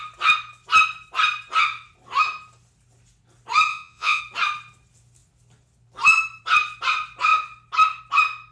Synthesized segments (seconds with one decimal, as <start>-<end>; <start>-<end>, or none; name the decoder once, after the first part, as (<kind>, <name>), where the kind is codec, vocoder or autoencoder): 3.7-4.2 (vocoder, Vocos)